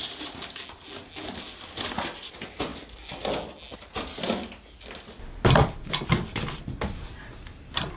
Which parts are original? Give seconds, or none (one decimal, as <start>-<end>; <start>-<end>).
0.0-8.0

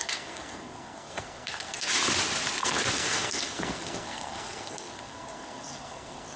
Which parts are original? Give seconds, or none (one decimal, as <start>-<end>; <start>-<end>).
1.9-2.6